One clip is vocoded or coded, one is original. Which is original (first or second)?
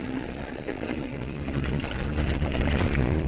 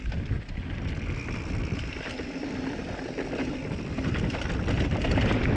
second